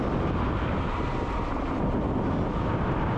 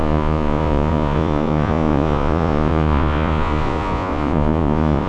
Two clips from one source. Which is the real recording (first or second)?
first